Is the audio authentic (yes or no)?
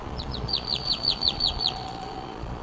no